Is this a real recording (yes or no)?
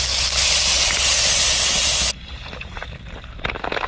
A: yes